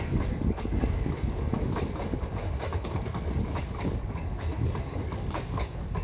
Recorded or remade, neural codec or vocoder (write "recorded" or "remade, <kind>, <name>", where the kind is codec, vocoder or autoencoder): remade, codec, DAC